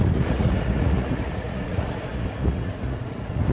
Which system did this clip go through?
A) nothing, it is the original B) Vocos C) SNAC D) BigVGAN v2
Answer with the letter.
B